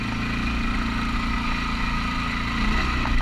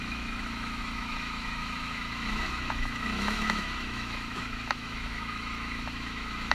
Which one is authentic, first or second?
first